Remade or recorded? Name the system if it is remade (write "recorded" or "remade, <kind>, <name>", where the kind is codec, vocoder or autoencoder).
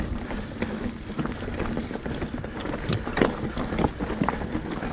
recorded